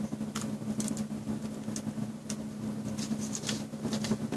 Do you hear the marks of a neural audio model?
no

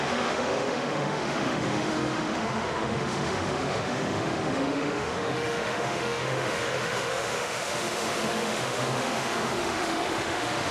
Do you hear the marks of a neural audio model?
yes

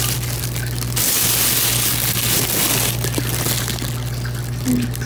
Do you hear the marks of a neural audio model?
no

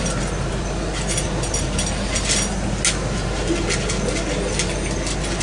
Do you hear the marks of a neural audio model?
no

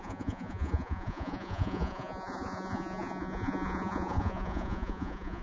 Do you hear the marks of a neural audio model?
yes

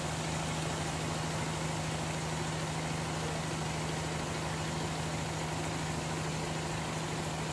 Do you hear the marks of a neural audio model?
no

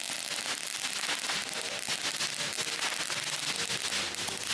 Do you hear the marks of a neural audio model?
no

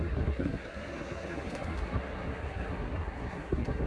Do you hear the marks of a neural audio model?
yes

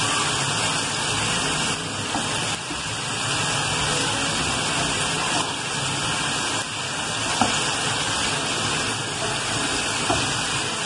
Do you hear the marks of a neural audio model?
no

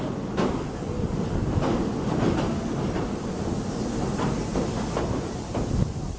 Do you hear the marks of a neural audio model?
no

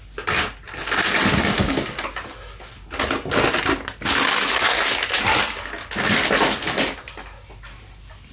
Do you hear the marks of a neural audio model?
no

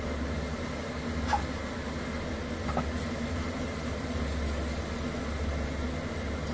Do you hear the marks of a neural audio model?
no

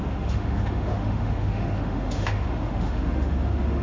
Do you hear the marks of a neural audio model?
yes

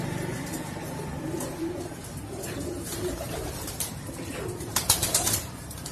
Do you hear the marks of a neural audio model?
yes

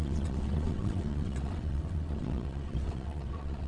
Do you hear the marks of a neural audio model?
yes